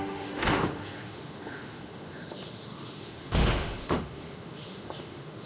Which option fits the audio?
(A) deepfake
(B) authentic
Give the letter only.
A